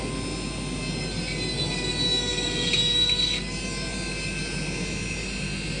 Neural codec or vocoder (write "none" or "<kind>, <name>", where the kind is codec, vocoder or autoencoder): none